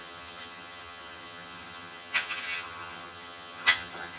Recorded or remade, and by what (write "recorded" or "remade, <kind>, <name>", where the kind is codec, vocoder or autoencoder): remade, vocoder, HiFi-GAN